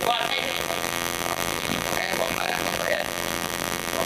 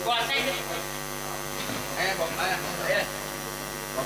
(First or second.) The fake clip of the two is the first